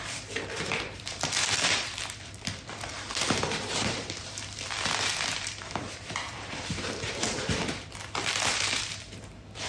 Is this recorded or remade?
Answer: remade